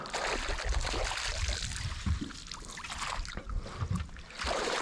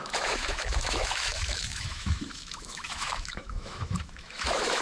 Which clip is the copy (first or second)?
second